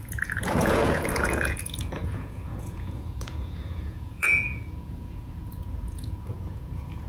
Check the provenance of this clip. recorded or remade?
remade